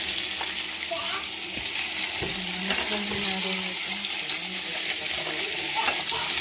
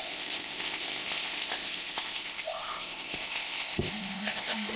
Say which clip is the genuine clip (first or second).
first